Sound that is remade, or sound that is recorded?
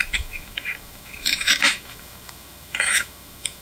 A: remade